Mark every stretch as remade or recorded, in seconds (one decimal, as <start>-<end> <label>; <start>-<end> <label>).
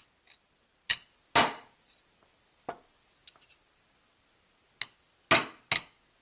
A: 0.0-6.2 recorded